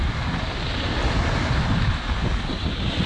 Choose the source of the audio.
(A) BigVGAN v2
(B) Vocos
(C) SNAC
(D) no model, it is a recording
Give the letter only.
D